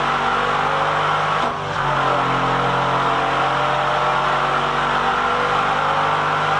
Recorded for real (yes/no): yes